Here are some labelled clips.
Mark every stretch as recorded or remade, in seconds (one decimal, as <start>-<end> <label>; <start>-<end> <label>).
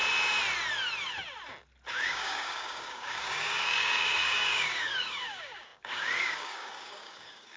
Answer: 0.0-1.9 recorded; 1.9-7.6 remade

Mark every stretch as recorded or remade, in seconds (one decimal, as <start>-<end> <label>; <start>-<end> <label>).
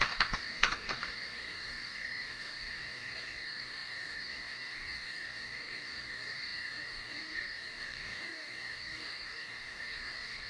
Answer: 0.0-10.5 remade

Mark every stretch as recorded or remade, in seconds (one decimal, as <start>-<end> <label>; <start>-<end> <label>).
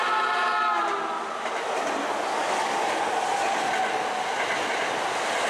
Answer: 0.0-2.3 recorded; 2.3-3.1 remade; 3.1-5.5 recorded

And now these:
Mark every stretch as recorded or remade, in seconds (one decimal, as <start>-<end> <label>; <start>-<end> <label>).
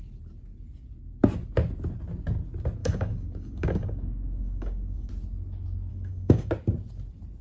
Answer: 0.0-2.8 recorded; 2.8-5.1 remade; 5.1-5.9 recorded; 5.9-6.5 remade; 6.5-7.4 recorded